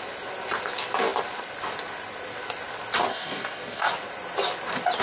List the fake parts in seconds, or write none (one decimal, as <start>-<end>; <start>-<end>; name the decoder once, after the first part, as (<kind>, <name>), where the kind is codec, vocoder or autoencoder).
3.1-3.9 (codec, DAC)

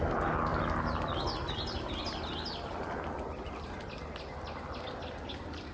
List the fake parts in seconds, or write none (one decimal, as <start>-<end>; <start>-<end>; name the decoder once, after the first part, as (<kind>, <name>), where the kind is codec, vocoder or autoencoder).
none

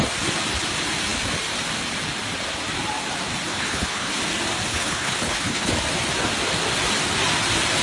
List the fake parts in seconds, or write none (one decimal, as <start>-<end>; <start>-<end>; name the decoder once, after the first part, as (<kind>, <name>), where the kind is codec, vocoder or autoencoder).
3.5-4.1 (codec, HILCodec); 4.7-5.7

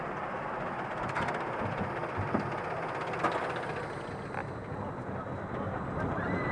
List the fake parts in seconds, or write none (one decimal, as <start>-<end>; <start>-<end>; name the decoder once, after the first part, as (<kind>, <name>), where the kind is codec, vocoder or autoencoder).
none

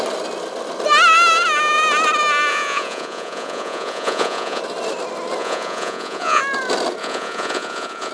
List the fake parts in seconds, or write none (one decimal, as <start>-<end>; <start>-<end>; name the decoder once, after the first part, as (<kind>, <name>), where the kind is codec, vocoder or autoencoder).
2.5-4.6 (vocoder, Vocos); 5.4-6.4; 7.0-8.1

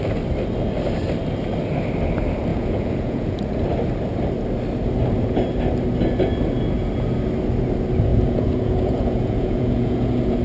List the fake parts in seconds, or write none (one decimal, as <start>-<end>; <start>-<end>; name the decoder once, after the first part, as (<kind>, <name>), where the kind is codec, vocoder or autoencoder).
2.5-3.4 (vocoder, Vocos); 8.1-10.4

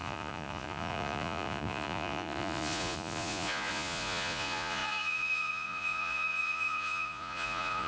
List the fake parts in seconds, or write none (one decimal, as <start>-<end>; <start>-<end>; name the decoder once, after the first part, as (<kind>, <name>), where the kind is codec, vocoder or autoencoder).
0.0-7.9 (vocoder, Vocos)